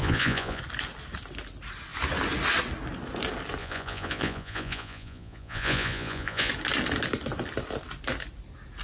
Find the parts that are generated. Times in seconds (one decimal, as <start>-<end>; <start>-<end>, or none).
0.0-0.6; 3.6-6.5